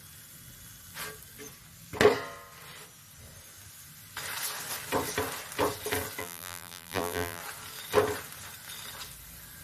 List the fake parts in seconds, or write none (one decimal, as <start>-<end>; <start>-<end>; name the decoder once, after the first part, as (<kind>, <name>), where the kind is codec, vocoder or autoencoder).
6.2-7.4 (vocoder, BigVGAN v2)